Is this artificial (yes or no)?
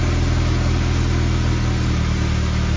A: no